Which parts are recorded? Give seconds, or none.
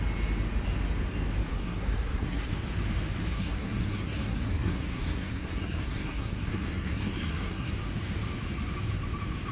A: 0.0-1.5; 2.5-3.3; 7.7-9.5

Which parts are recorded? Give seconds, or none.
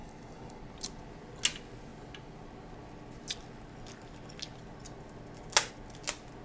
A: 0.6-6.4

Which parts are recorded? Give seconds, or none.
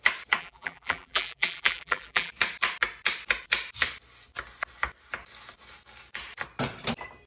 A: 0.0-0.4; 2.3-7.3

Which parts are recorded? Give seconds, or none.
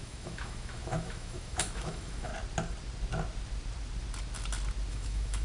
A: 2.3-4.9